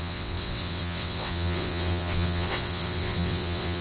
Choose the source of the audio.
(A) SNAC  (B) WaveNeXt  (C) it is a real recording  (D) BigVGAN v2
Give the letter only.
B